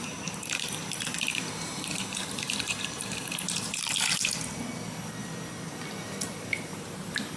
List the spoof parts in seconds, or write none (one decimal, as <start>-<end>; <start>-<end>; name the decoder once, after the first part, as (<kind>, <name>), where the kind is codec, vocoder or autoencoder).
0.0-4.4 (vocoder, BigVGAN v2); 5.2-7.4